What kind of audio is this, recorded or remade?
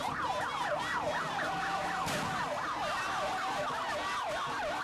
recorded